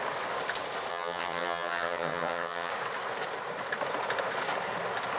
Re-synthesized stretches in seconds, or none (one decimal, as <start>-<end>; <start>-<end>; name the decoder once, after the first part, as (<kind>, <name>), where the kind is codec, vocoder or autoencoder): 0.9-2.7 (vocoder, HiFi-GAN)